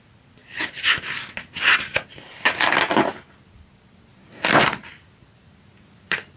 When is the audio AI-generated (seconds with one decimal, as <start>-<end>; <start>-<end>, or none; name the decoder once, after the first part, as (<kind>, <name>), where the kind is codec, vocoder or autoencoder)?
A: none